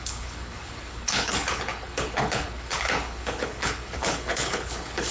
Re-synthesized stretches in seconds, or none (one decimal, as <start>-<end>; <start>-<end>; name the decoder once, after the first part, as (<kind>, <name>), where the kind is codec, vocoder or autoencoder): 0.0-5.1 (codec, HILCodec)